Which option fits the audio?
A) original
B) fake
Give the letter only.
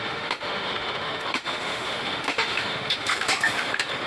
B